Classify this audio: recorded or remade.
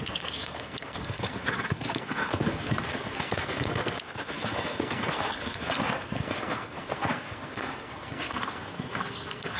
remade